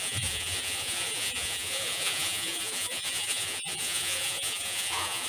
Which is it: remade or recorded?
remade